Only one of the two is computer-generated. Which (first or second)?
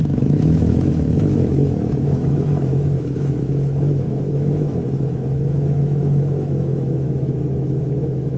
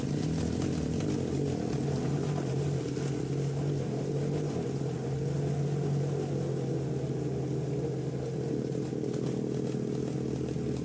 first